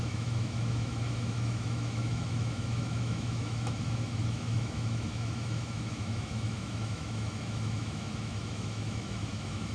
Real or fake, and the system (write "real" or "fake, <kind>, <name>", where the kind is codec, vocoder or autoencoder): fake, autoencoder, DAC-VAE